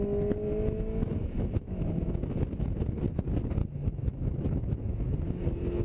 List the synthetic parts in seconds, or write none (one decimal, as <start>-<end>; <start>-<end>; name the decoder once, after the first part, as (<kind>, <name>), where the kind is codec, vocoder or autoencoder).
0.5-3.0 (autoencoder, DAC-VAE); 3.6-5.1